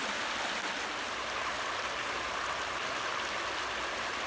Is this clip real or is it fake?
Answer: real